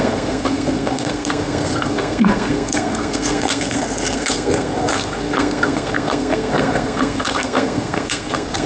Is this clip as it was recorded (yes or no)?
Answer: no